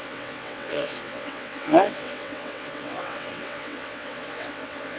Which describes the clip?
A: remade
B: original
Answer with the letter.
A